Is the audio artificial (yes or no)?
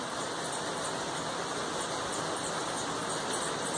no